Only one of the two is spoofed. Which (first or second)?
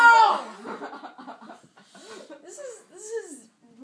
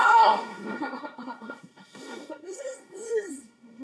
second